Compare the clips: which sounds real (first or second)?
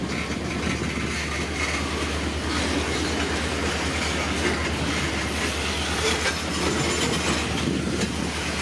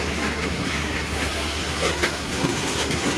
first